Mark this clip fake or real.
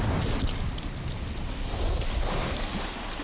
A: real